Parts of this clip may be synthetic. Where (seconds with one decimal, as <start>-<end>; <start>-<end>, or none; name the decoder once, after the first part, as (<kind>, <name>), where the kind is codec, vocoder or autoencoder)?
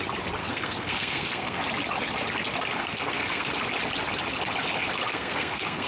0.4-1.6 (codec, SNAC); 2.8-3.5; 5.1-5.9